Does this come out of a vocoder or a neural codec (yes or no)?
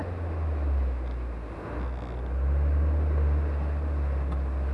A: no